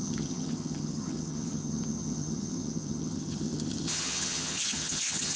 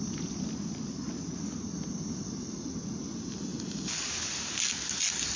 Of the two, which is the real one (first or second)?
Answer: second